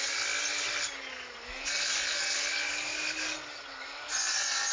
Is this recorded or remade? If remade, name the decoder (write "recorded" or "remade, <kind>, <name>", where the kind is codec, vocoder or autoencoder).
recorded